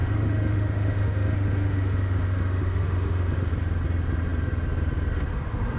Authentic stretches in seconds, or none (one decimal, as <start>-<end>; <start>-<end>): 3.5-5.8